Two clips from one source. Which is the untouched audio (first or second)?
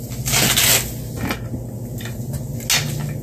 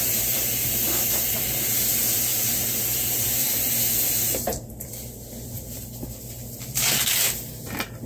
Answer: first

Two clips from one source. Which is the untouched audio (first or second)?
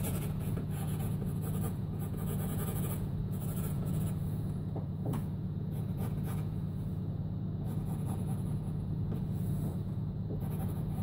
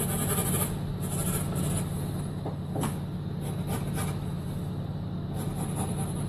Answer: second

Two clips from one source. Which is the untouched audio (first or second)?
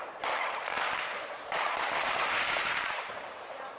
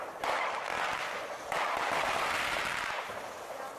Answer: second